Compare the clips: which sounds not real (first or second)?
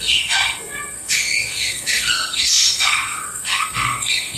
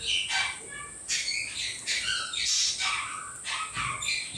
first